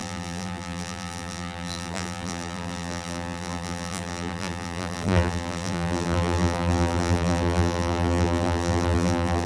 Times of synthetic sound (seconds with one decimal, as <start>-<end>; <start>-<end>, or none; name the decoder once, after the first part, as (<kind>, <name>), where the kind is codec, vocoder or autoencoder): 0.0-9.5 (vocoder, BigVGAN v2)